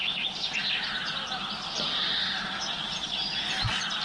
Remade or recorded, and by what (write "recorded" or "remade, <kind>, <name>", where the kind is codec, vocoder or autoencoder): recorded